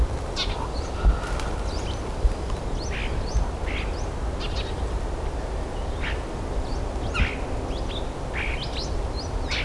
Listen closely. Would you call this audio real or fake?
real